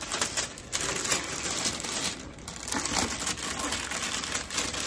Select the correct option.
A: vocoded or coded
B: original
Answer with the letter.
B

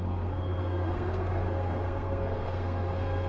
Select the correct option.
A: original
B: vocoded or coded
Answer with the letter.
B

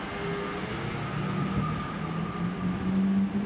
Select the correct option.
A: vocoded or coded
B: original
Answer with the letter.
B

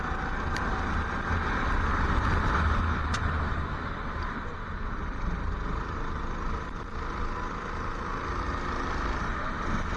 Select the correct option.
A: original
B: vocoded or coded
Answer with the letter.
A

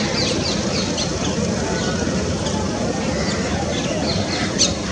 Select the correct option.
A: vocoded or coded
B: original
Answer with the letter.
B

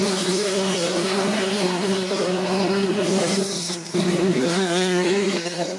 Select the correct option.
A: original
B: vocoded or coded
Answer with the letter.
B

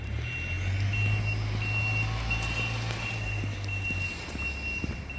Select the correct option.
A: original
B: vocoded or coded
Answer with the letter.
A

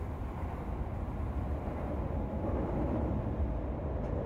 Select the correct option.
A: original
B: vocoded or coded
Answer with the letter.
A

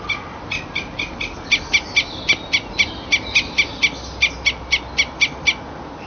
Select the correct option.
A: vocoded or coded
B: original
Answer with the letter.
B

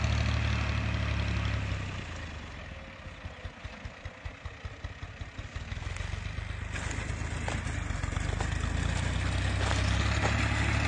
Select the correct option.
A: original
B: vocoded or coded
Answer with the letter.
A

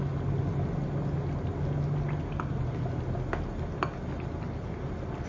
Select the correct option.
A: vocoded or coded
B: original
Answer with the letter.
B